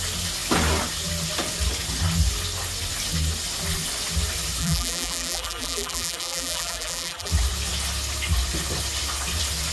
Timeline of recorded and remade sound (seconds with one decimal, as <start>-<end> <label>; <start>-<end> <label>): 0.0-4.6 recorded; 4.6-7.3 remade; 7.3-9.7 recorded